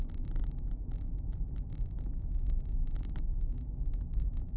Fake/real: real